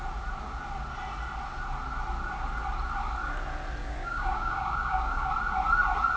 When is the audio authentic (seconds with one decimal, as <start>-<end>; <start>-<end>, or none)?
0.0-3.8; 5.3-6.2